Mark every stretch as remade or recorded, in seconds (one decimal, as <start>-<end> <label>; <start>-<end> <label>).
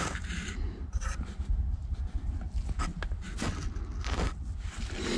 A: 0.0-1.8 remade; 1.8-5.2 recorded